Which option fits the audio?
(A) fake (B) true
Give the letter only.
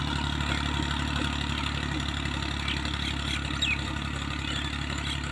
B